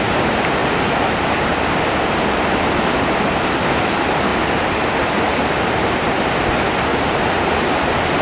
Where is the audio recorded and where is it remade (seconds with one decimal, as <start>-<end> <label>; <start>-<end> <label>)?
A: 0.0-4.3 recorded; 4.3-6.3 remade; 6.3-6.9 recorded; 6.9-7.5 remade; 7.5-8.2 recorded